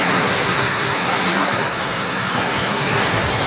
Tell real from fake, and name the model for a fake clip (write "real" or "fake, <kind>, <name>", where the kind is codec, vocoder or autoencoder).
fake, codec, SNAC